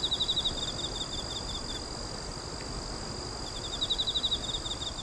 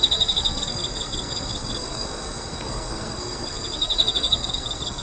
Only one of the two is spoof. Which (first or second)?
second